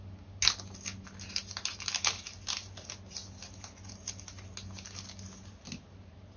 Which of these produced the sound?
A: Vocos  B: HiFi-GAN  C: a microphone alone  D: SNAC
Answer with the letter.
C